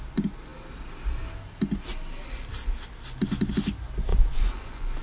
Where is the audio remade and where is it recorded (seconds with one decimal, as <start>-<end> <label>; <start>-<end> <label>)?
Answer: 0.0-4.1 recorded; 4.1-5.0 remade